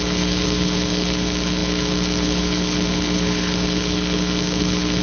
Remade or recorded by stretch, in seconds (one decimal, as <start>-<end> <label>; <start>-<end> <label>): 0.0-5.0 remade